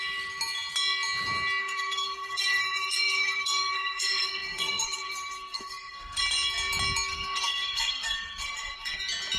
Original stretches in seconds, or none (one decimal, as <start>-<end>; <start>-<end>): 0.0-1.6; 6.2-7.1; 9.0-9.4